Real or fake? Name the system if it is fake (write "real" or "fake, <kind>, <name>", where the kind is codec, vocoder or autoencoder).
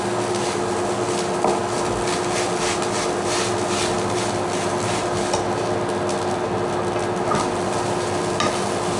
real